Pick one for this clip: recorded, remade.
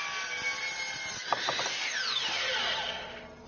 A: recorded